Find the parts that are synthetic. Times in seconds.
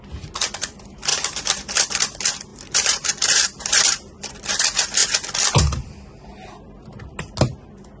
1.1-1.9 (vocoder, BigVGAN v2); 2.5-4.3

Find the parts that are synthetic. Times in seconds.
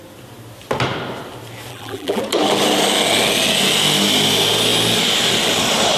1.7-2.2 (vocoder, BigVGAN v2)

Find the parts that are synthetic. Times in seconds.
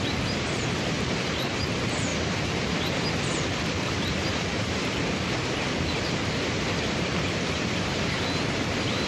0.0-2.1 (vocoder, BigVGAN v2); 3.7-9.1